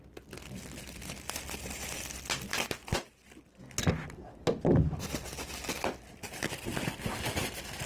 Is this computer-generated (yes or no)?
no